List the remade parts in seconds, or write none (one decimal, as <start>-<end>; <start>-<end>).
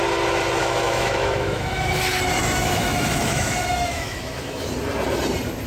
0.6-1.9; 2.4-4.7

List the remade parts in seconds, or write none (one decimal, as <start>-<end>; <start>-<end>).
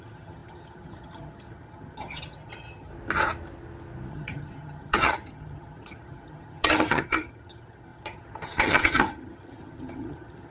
0.0-2.9; 4.1-10.5